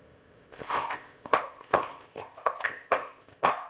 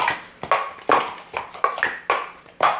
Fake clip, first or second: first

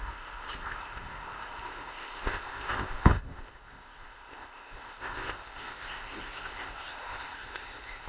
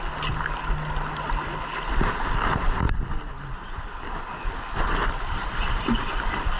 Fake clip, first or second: first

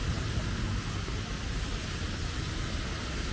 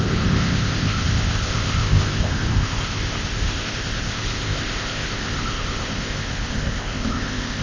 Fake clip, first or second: second